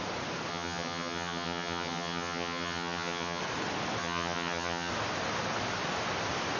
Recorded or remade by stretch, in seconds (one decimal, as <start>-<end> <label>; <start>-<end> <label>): 0.0-0.5 recorded; 0.5-3.4 remade; 3.4-4.0 recorded; 4.0-4.9 remade; 4.9-6.6 recorded